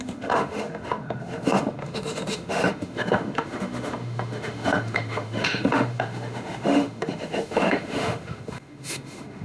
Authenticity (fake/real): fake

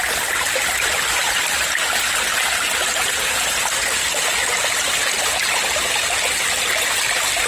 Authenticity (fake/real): real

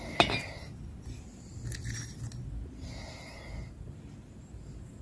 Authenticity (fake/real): real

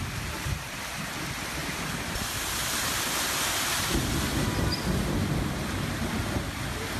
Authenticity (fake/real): real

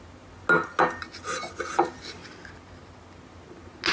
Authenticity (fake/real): real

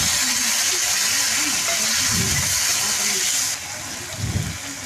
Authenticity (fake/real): real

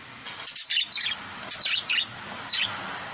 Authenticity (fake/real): real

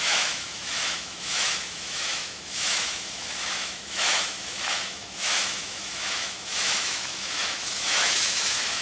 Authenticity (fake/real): fake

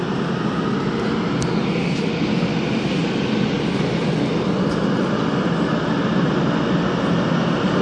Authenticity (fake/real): real